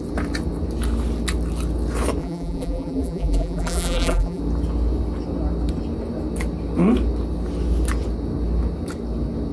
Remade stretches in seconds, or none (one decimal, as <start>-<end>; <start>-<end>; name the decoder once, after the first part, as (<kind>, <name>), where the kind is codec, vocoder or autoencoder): 2.2-4.4 (vocoder, BigVGAN v2)